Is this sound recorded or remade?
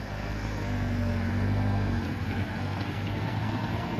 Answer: remade